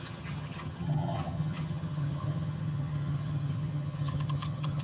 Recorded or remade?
remade